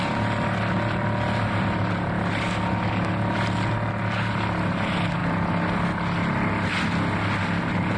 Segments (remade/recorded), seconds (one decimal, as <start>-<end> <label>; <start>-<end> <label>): 0.0-8.0 recorded